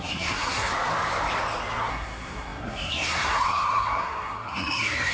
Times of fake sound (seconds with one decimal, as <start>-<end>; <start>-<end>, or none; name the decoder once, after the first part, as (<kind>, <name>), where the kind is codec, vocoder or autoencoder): 0.0-0.7 (codec, SNAC); 1.9-5.1